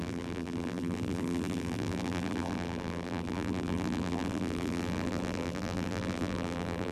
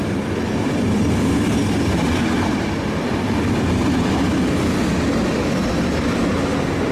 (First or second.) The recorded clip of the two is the second